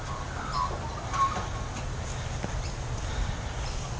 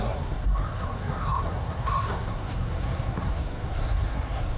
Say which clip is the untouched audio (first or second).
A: first